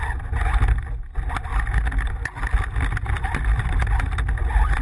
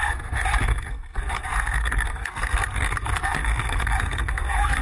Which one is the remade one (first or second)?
second